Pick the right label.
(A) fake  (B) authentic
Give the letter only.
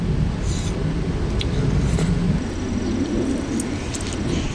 B